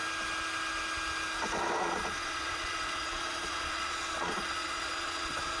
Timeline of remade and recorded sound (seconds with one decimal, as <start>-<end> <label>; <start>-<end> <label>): 0.0-1.8 recorded; 1.8-5.6 remade